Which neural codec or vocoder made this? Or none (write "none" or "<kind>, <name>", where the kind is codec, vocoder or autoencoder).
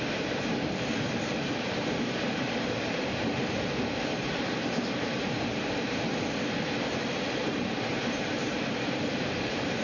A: vocoder, BigVGAN v2